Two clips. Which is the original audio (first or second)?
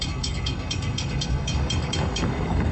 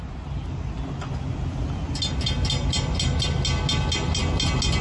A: second